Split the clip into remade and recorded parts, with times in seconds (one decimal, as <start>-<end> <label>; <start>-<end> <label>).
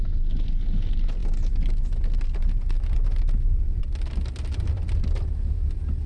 0.0-6.1 recorded